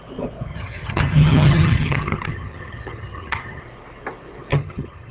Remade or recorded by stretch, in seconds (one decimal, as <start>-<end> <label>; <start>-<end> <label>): 0.0-0.5 recorded; 0.5-3.6 remade; 3.6-4.5 recorded; 4.5-5.1 remade